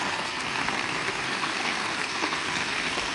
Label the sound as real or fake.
fake